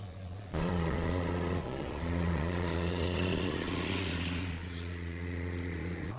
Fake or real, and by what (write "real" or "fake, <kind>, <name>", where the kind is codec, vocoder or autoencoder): fake, vocoder, Vocos